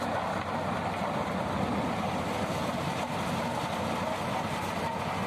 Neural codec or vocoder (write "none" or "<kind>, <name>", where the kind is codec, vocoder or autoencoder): none